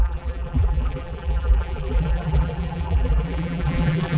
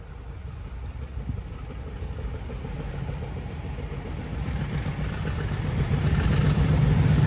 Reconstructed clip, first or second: first